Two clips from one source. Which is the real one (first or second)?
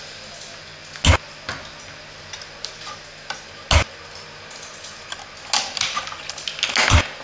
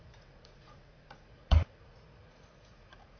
first